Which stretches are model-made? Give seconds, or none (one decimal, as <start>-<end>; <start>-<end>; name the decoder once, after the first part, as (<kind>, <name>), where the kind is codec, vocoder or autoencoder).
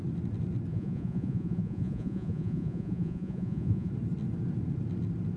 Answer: 0.7-3.9 (vocoder, Vocos)